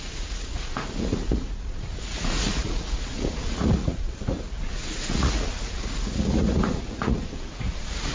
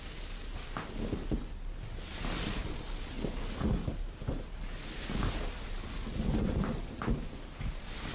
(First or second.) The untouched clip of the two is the second